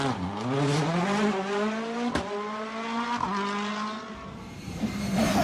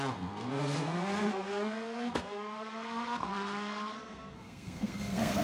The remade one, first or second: second